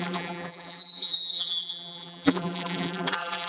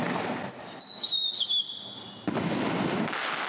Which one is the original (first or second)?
second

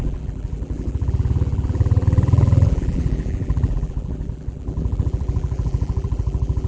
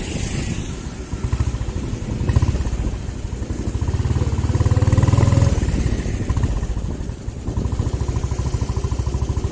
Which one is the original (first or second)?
second